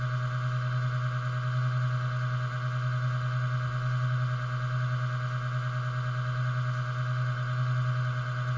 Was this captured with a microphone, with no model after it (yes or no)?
yes